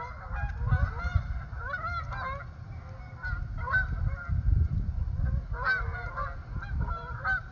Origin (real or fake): real